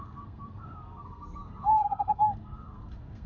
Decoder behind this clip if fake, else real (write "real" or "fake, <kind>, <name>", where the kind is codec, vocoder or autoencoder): fake, codec, SNAC